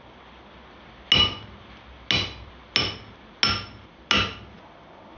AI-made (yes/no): no